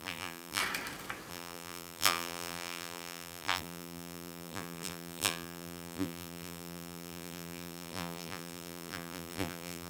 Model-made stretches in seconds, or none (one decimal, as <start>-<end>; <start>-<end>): 0.0-0.6; 1.3-9.9